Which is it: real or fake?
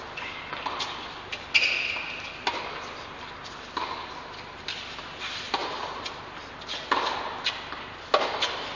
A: real